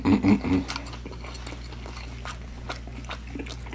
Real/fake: real